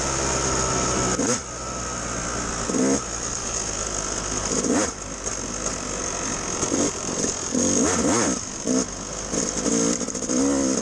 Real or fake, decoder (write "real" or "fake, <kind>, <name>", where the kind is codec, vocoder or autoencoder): real